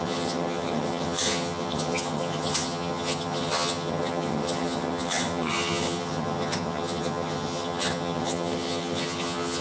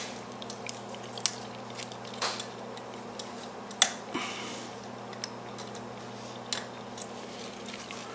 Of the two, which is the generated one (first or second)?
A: first